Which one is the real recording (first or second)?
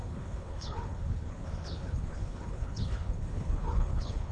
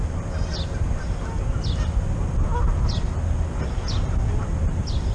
second